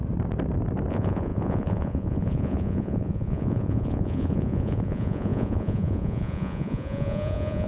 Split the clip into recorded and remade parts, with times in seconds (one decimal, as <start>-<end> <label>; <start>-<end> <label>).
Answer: 0.0-0.9 recorded; 0.9-7.7 remade